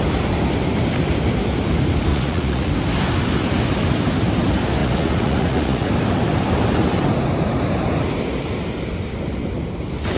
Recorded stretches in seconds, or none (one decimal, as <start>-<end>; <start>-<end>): 0.0-2.1; 2.7-4.8; 5.9-10.2